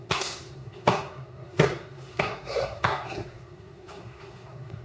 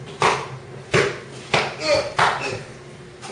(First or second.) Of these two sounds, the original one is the second